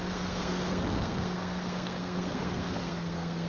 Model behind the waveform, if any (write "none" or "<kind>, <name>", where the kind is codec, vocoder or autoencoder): codec, SNAC